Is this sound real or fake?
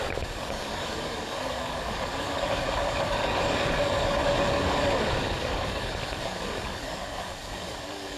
fake